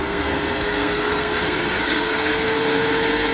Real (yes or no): no